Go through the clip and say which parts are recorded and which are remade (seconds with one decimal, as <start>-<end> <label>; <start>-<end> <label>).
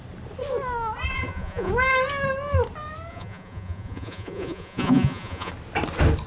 0.0-1.1 recorded; 1.1-1.7 remade; 1.7-3.1 recorded; 3.1-5.5 remade; 5.5-6.3 recorded